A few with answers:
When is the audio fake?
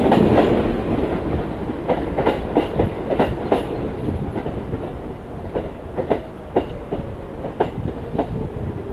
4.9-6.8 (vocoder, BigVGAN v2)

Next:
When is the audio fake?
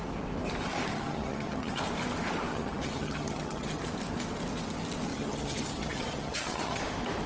0.9-1.8 (vocoder, HiFi-GAN); 2.5-3.8; 5.1-6.8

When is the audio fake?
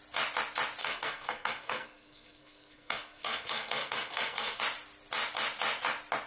0.8-4.6 (codec, SNAC)